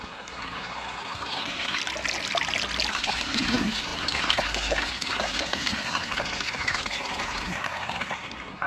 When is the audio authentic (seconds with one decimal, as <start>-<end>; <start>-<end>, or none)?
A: 1.8-2.9